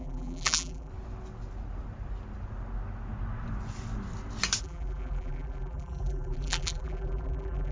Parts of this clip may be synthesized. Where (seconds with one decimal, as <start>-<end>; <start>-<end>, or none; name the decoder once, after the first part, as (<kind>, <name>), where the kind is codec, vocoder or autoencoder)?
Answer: 0.0-0.9 (vocoder, BigVGAN v2); 4.6-7.7